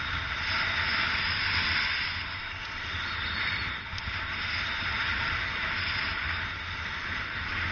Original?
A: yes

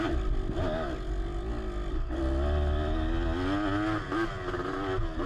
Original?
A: yes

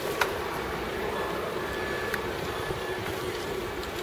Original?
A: yes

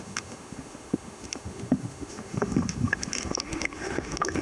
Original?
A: no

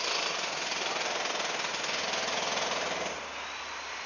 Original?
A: yes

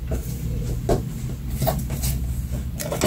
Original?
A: yes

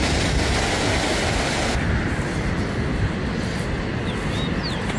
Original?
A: yes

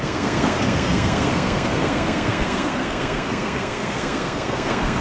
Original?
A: no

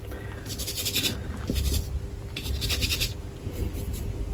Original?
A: yes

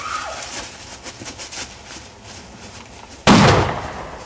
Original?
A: yes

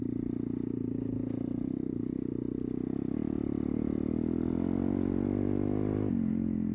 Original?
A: yes